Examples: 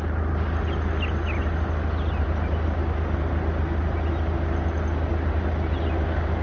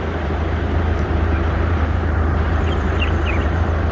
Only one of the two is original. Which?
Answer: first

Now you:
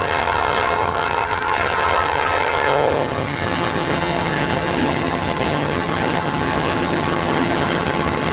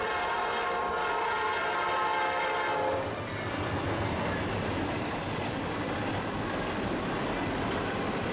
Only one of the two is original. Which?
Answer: second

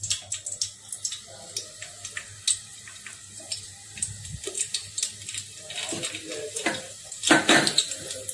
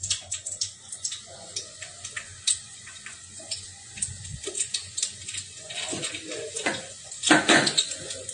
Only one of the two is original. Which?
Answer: first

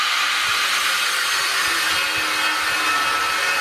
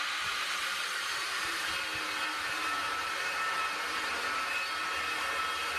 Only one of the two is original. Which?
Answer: first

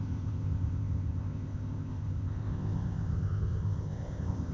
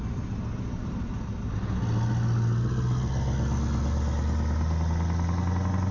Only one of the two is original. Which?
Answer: second